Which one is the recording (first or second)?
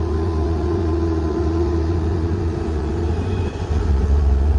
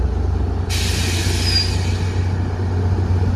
second